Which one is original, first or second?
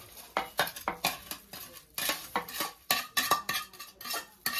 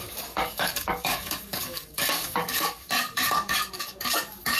first